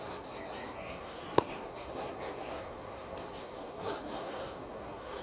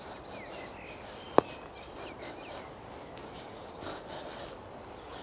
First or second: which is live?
second